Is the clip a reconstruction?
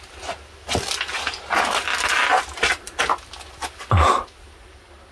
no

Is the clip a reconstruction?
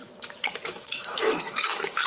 yes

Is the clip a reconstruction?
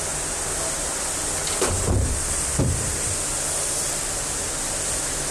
no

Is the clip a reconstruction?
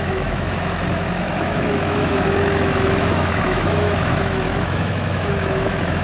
yes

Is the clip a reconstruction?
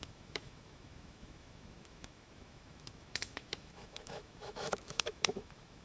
yes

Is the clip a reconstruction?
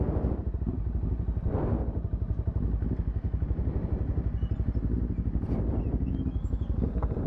no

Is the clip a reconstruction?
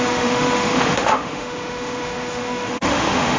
yes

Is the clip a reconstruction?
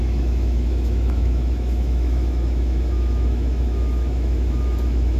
yes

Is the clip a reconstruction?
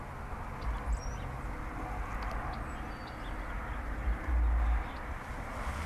no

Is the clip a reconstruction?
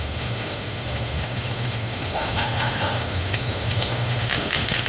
yes